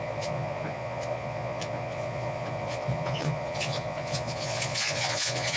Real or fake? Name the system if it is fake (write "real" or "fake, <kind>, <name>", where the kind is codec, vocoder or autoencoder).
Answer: fake, vocoder, Vocos